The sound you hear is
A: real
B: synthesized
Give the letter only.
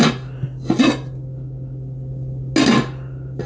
A